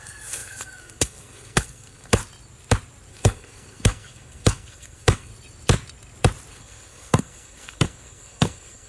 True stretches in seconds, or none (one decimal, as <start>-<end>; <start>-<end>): 2.2-3.1; 5.3-6.5